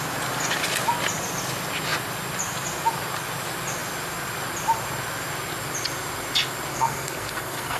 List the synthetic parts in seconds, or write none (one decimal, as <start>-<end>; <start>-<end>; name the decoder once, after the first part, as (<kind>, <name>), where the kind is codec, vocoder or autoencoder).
6.7-7.8 (codec, SNAC)